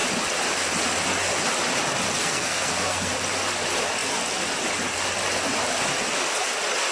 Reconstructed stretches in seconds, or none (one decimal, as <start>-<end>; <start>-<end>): 2.2-3.1